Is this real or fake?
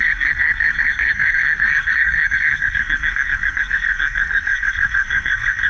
fake